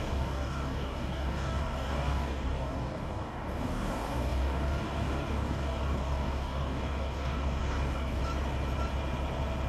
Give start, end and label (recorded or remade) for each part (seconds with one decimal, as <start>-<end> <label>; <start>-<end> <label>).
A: 0.0-8.2 remade; 8.2-9.7 recorded